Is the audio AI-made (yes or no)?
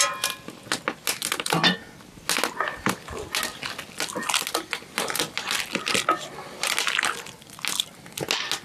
no